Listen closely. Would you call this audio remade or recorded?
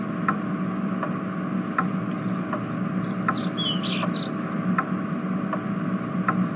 recorded